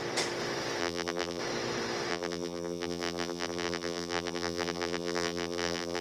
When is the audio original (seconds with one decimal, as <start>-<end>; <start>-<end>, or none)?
0.0-0.8; 1.4-2.1